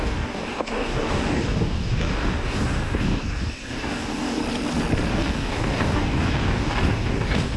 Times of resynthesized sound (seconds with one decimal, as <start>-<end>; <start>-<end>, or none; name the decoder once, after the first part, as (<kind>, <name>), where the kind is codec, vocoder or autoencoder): 0.0-4.4 (codec, DAC); 5.1-7.6